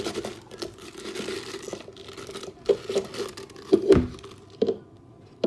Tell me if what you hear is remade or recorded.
recorded